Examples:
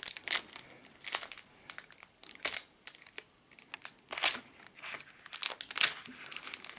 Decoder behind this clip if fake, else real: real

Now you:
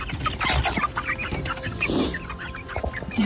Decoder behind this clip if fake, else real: real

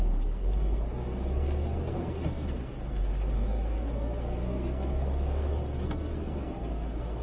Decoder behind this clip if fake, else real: fake, codec, SNAC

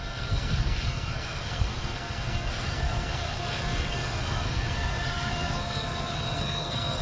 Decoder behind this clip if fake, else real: fake, codec, SNAC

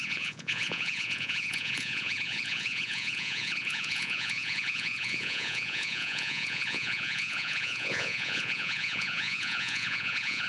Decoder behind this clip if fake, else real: fake, vocoder, Vocos